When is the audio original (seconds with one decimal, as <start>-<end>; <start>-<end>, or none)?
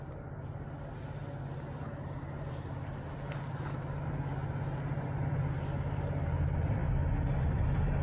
0.0-8.0